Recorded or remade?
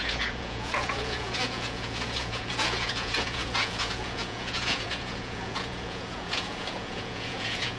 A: remade